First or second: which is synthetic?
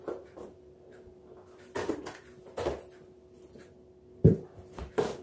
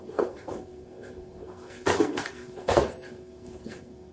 second